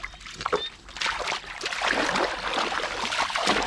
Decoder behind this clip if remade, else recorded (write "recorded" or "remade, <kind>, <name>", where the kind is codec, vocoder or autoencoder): recorded